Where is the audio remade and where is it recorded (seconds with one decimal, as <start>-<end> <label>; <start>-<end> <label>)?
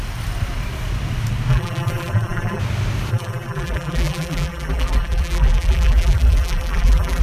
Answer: 0.0-1.5 recorded; 1.5-2.6 remade; 2.6-3.1 recorded; 3.1-7.2 remade